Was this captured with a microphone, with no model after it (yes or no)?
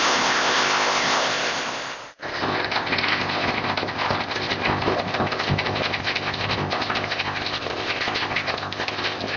no